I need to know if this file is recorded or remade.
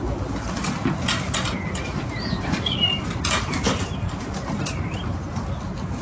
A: recorded